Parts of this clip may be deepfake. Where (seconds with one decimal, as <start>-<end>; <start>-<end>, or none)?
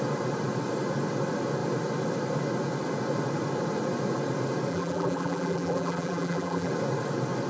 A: 4.7-6.7